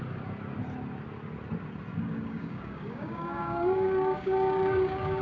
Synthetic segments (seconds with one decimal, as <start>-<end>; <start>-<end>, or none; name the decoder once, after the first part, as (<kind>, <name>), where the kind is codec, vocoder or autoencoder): 1.9-5.2 (codec, DAC)